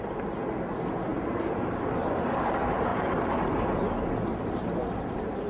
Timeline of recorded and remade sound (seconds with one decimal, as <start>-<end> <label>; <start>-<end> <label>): 0.0-5.5 recorded